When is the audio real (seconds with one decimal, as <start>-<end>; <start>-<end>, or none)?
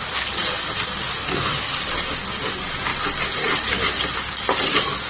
0.0-5.1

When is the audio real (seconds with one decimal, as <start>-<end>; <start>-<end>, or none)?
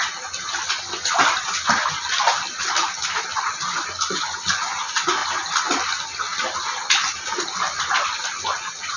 0.0-9.0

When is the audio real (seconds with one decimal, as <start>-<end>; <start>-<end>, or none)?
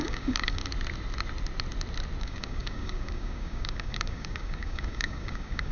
0.6-2.2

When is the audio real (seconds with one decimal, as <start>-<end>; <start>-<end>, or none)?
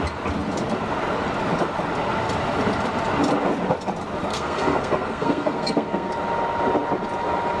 0.0-4.3; 6.1-7.6